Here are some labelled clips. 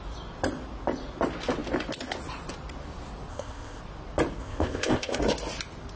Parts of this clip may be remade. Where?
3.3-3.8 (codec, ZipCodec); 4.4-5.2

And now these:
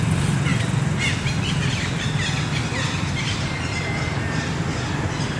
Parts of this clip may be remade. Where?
none

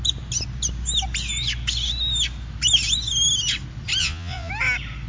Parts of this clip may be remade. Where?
4.0-4.5 (vocoder, Vocos)

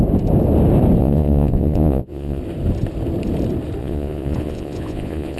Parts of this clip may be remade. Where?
1.0-2.4 (vocoder, Vocos); 3.8-5.4

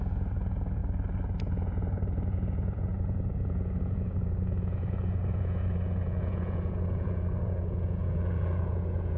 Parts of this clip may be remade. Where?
0.0-0.8 (vocoder, Vocos); 1.4-9.2

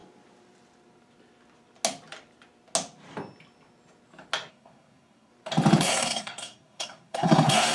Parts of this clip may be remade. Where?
4.5-5.3 (codec, SNAC); 5.8-7.7

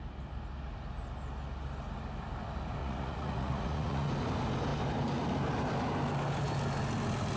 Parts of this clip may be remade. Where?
2.8-4.1 (vocoder, Vocos)

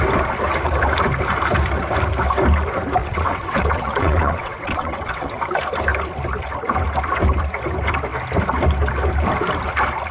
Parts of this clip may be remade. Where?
3.0-5.4 (vocoder, WaveNeXt)